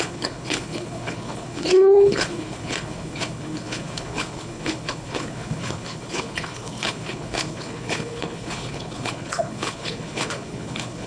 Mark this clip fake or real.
fake